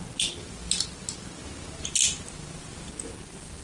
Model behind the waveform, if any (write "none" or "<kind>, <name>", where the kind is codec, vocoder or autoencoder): none